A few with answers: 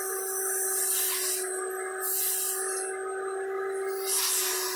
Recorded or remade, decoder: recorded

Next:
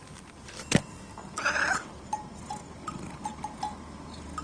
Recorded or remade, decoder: recorded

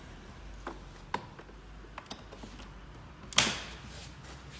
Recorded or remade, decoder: recorded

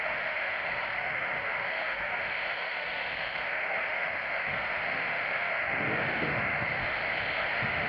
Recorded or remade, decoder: remade, autoencoder, DAC-VAE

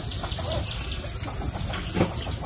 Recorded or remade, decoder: recorded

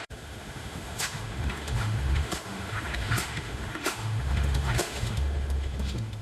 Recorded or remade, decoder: remade, autoencoder, DAC-VAE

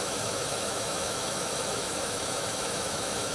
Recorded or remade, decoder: remade, autoencoder, DAC-VAE